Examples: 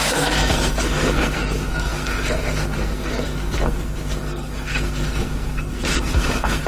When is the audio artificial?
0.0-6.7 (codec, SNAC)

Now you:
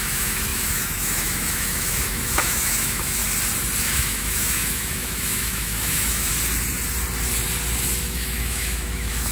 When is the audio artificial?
0.0-3.2 (autoencoder, DAC-VAE); 3.8-6.3; 8.0-9.3